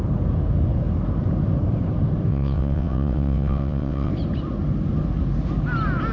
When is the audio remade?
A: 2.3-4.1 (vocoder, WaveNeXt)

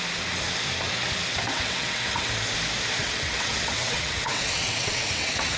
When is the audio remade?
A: 1.3-2.3 (vocoder, WaveNeXt); 3.0-5.6